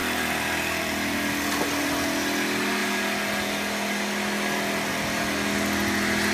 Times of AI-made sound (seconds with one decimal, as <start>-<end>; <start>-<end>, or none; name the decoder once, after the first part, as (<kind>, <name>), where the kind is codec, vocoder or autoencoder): none